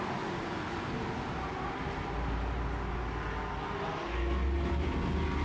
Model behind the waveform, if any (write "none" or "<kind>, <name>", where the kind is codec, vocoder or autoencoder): none